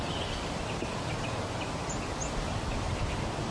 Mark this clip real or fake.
real